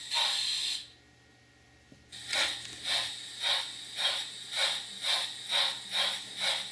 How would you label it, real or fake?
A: real